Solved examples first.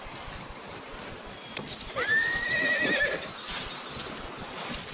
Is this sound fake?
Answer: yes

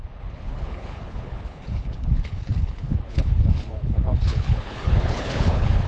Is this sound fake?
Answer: yes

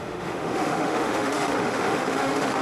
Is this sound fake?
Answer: yes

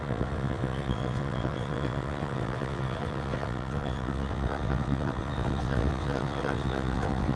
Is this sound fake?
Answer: yes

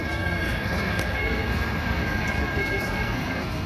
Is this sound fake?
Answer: yes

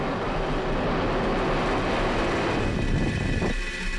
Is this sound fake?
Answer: no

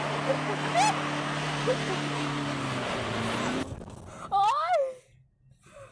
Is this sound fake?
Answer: no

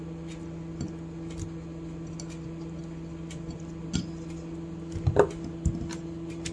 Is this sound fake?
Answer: no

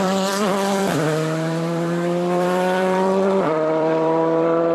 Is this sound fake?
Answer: yes